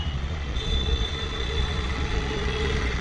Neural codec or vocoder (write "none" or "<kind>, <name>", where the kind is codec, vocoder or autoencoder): vocoder, Vocos